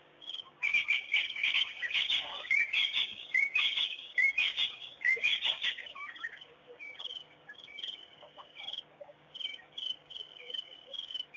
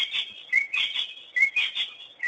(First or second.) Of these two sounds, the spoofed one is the first